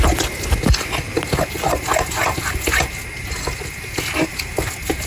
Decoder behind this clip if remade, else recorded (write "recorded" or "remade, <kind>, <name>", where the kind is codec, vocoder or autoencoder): recorded